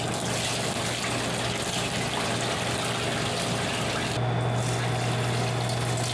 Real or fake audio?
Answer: real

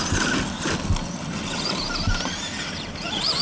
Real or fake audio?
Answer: real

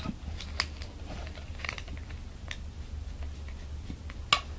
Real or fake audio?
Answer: real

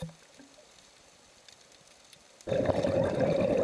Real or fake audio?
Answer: real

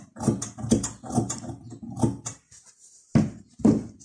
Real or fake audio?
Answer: real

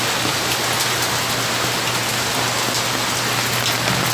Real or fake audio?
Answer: real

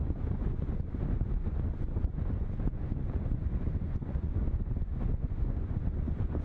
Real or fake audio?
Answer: fake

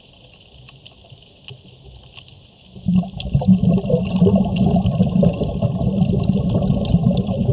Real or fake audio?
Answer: fake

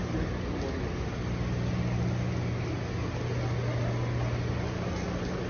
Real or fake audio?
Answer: real